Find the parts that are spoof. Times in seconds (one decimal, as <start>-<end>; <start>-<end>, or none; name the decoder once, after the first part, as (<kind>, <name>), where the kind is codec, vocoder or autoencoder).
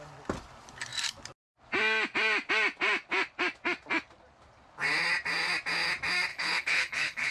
6.3-7.3 (codec, HILCodec)